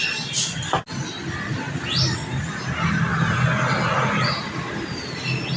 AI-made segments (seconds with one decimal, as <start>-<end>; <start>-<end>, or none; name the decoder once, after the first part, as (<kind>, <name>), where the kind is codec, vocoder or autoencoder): none